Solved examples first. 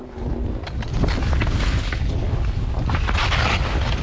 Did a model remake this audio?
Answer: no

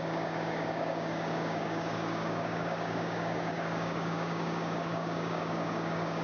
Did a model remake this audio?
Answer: yes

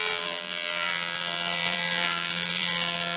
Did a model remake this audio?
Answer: yes